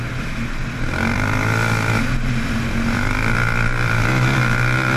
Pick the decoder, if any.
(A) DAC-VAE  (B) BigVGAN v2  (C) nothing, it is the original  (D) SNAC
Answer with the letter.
C